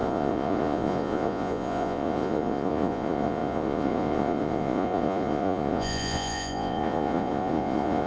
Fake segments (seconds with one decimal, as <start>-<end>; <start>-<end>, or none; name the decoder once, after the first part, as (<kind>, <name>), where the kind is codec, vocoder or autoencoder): 0.0-8.1 (vocoder, Vocos)